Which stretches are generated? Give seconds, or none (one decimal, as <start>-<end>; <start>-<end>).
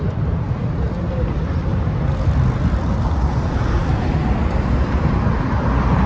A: none